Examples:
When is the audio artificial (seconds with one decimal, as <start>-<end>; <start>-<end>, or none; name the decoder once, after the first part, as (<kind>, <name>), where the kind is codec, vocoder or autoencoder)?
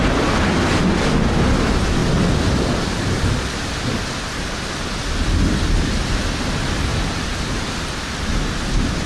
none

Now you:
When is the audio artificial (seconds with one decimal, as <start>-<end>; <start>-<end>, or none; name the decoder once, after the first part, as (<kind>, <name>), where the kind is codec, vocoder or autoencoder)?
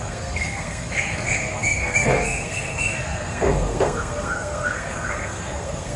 0.0-6.0 (codec, SNAC)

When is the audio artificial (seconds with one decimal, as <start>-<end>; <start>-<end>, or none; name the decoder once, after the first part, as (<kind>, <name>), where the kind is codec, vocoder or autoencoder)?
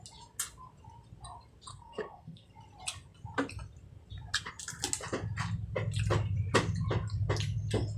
1.7-2.5 (codec, SNAC)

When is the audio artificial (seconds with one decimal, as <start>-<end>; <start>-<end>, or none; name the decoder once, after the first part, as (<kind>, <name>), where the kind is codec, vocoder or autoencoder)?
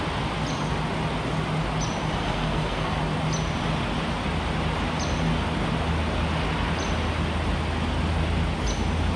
2.2-3.0 (codec, SNAC)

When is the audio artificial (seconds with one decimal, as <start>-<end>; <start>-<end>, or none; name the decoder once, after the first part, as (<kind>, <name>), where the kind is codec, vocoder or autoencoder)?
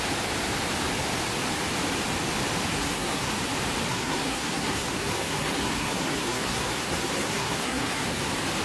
2.7-3.3 (codec, SNAC); 3.9-8.2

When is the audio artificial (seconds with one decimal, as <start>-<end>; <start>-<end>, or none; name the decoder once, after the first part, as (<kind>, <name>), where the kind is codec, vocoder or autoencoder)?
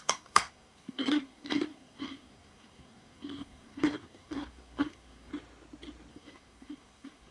0.0-5.3 (codec, SNAC); 6.1-7.3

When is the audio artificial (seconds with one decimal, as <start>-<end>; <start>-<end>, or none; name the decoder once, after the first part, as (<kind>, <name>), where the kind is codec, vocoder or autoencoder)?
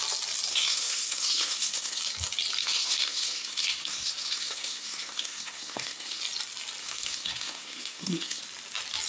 0.5-2.0 (codec, SNAC); 2.6-6.2; 6.8-8.4